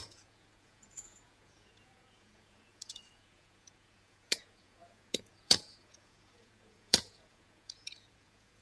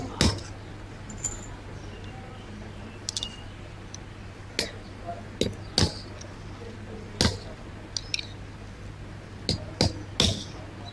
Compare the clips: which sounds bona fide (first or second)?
second